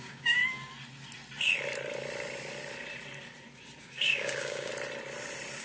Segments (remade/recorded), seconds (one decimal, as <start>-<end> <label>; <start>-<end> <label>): 0.0-0.4 remade; 0.4-3.8 recorded; 3.8-4.7 remade; 4.7-5.6 recorded